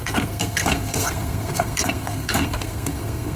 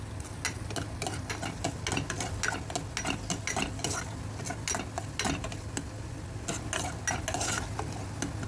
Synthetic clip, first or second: first